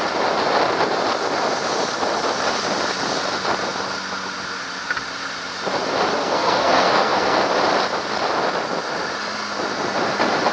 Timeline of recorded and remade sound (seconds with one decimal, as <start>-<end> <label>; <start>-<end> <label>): 0.0-6.2 recorded; 6.2-7.5 remade; 7.5-10.5 recorded